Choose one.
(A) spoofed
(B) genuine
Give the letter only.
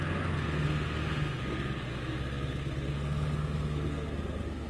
A